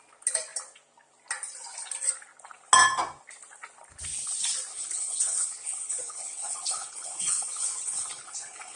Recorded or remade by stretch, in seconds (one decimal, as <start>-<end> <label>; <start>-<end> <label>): 0.0-4.7 recorded; 4.7-8.8 remade